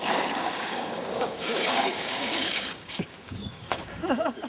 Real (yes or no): no